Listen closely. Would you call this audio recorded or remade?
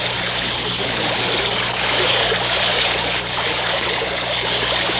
remade